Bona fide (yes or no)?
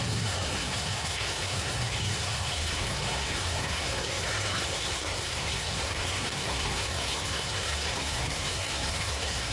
no